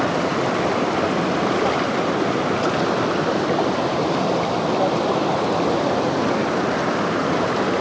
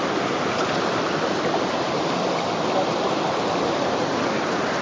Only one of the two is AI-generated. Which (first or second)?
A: second